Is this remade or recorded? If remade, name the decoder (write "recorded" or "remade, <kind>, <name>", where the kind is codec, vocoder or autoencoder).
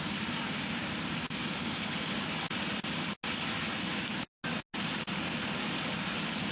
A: recorded